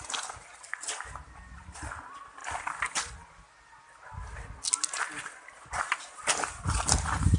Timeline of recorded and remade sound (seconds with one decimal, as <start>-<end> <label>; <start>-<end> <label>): 0.0-7.4 recorded

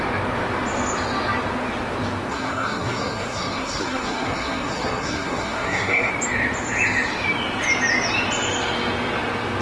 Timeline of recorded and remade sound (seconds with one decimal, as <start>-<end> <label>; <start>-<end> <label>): 0.0-2.3 recorded; 2.3-6.1 remade; 6.1-9.6 recorded

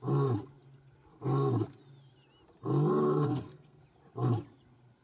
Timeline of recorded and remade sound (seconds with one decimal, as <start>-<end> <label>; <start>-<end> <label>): 0.0-3.0 recorded; 3.0-3.8 remade; 3.8-5.0 recorded

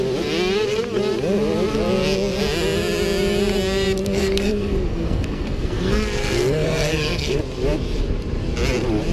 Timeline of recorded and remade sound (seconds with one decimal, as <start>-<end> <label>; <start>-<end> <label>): 0.0-4.0 recorded; 4.0-7.4 remade; 7.4-9.1 recorded

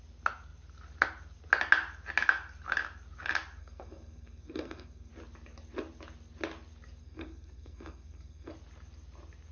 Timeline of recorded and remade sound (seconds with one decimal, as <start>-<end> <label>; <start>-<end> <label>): 0.0-3.6 recorded; 3.6-5.1 remade; 5.1-7.0 recorded; 7.0-8.5 remade; 8.5-9.5 recorded